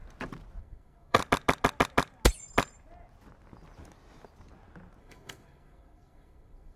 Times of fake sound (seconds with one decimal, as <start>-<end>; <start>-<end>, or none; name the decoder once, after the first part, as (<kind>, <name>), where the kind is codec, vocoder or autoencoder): 0.6-1.2 (codec, SNAC); 5.0-6.8